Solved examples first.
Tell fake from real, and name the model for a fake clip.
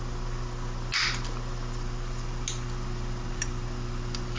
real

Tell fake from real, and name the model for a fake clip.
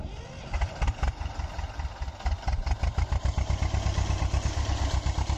real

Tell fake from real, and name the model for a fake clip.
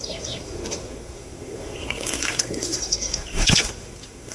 fake, codec, SNAC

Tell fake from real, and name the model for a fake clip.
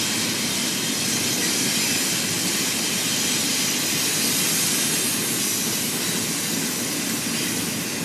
real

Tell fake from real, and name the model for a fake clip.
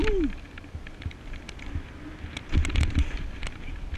real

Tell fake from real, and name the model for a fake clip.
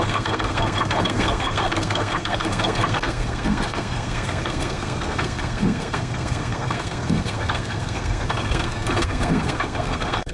fake, codec, SNAC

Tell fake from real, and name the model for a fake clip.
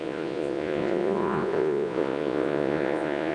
fake, vocoder, Vocos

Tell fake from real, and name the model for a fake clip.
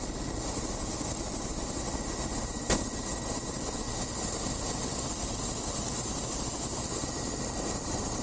real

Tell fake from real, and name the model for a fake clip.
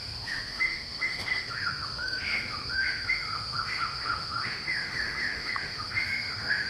fake, autoencoder, DAC-VAE